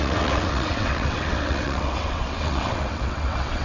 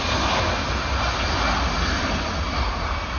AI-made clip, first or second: first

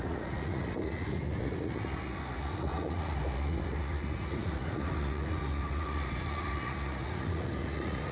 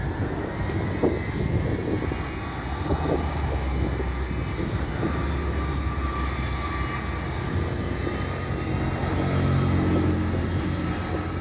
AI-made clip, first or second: first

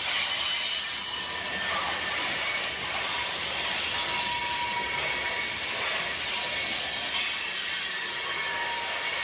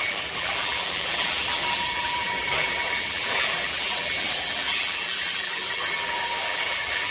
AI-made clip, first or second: second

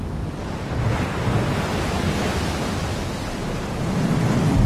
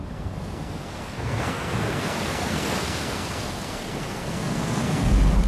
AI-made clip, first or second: second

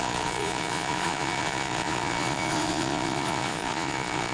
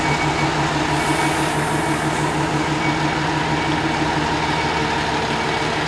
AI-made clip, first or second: first